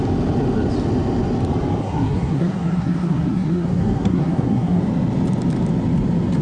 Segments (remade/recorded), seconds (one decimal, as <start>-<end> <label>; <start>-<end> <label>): 0.0-1.8 recorded; 1.8-4.8 remade; 4.8-6.4 recorded

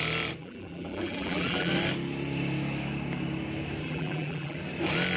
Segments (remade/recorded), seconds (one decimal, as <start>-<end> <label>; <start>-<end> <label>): 0.0-0.4 recorded; 0.4-1.7 remade; 1.7-3.8 recorded; 3.8-4.6 remade; 4.6-5.2 recorded

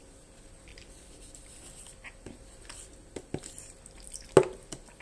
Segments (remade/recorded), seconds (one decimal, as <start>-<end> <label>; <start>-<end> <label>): 0.0-0.7 recorded; 0.7-2.9 remade; 2.9-5.0 recorded

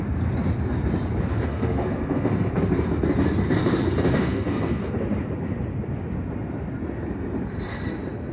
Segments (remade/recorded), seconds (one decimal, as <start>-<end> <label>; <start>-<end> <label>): 0.0-1.3 recorded; 1.3-2.5 remade; 2.5-4.2 recorded; 4.2-4.8 remade; 4.8-8.3 recorded

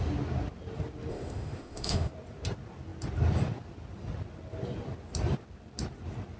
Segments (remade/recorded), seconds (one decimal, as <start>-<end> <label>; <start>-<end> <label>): 0.0-1.1 recorded; 1.1-2.1 remade; 2.1-6.4 recorded

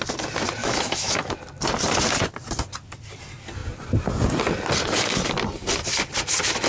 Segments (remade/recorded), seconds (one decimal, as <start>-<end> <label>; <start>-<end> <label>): 0.0-0.6 recorded; 0.6-1.4 remade; 1.4-6.7 recorded

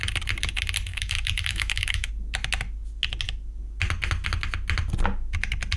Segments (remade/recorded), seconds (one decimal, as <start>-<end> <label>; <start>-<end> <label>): 0.0-0.9 recorded; 0.9-2.1 remade; 2.1-5.8 recorded

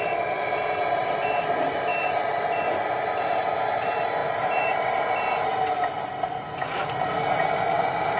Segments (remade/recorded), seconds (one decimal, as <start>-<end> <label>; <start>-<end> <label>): 0.0-8.2 recorded